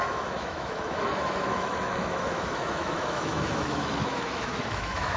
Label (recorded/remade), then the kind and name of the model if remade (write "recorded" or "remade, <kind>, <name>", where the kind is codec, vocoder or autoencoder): remade, autoencoder, DAC-VAE